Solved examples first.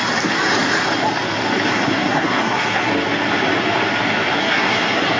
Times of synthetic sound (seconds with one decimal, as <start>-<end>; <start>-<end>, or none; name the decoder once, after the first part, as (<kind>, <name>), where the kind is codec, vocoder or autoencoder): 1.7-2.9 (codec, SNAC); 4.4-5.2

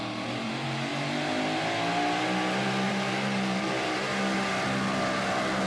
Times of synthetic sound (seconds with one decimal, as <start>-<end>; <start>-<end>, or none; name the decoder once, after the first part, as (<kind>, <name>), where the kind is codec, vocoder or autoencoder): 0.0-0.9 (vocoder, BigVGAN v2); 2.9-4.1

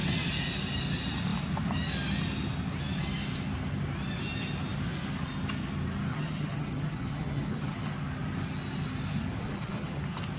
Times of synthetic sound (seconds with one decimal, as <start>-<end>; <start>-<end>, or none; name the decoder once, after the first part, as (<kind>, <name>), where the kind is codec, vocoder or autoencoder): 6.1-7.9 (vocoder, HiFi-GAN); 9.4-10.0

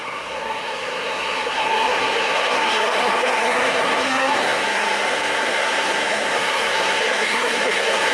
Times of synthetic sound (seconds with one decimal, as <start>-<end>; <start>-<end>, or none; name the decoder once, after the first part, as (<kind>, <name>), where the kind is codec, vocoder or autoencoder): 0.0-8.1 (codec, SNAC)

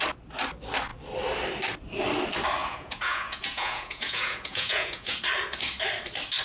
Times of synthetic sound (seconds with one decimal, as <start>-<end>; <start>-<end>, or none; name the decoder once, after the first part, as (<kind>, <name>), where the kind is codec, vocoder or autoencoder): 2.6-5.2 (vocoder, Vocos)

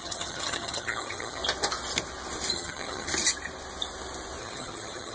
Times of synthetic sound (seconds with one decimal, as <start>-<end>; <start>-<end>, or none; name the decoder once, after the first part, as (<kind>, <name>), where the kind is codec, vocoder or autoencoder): 0.0-1.4 (vocoder, HiFi-GAN); 2.5-3.1; 4.4-5.1

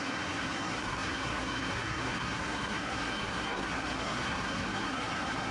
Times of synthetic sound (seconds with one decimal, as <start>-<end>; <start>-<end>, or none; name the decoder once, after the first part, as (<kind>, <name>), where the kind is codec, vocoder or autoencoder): 0.0-5.5 (codec, SNAC)

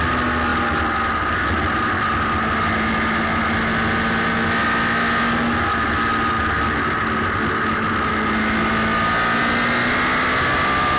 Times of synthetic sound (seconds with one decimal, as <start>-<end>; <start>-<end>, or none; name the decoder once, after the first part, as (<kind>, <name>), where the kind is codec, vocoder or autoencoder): none